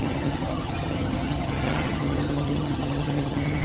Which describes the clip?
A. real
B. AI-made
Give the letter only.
B